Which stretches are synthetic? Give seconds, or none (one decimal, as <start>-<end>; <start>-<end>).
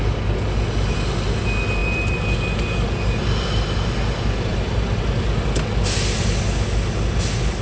4.5-5.0